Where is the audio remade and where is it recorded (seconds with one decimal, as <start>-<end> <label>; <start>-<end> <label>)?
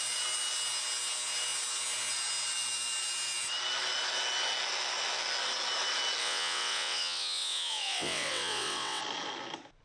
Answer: 0.0-6.2 recorded; 6.2-9.0 remade; 9.0-9.8 recorded